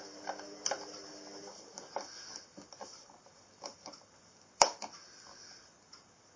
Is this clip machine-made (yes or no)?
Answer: no